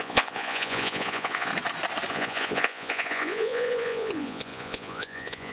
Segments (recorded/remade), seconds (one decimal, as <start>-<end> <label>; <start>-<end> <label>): 0.0-1.5 remade; 1.5-2.1 recorded; 2.1-5.5 remade